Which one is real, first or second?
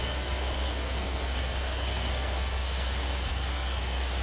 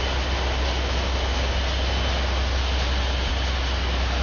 second